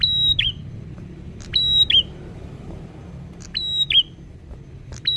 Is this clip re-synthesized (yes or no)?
no